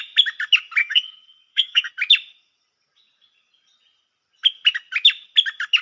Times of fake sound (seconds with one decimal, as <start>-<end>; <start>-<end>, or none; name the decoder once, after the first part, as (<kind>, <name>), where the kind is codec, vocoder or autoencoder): 0.8-1.9 (codec, SNAC)